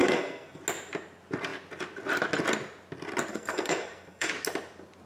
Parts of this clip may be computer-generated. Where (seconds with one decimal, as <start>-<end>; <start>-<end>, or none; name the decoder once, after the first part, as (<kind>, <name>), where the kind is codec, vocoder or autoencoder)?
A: 0.0-0.6 (codec, SNAC); 3.3-4.3